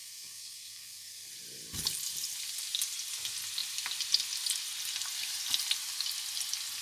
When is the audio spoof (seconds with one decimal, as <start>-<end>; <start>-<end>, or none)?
0.0-1.3